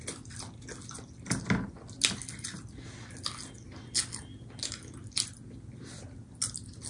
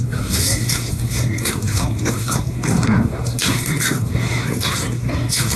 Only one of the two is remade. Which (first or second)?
second